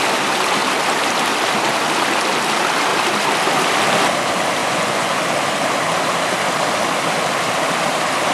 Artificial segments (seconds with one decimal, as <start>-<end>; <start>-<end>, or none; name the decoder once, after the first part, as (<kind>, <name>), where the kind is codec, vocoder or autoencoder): 4.6-5.2 (vocoder, Vocos)